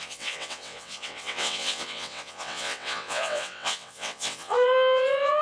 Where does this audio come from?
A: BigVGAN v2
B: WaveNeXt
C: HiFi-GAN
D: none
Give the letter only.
B